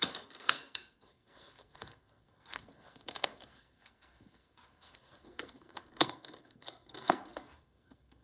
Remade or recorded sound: remade